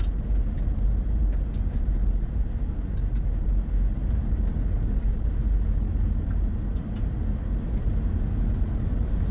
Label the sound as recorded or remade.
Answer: recorded